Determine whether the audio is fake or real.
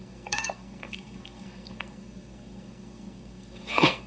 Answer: fake